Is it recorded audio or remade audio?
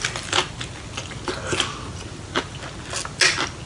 recorded